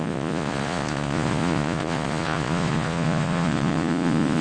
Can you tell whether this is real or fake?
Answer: fake